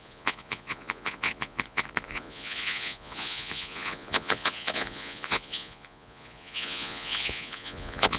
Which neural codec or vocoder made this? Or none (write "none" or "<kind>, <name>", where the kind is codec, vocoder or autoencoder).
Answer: vocoder, Vocos